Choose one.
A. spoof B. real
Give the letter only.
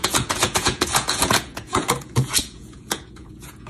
A